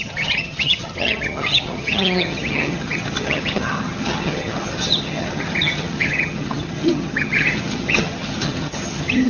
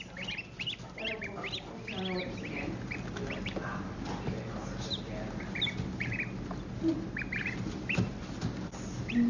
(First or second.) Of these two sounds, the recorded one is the second